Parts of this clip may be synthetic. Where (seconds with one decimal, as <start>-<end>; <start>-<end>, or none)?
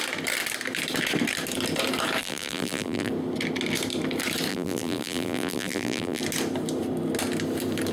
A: 2.2-3.1; 4.5-6.2